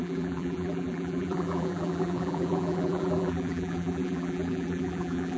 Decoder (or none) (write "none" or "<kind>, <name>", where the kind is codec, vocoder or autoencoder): vocoder, BigVGAN v2